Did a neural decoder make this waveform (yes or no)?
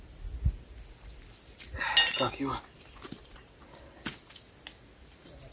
no